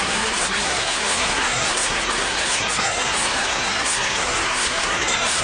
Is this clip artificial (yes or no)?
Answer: yes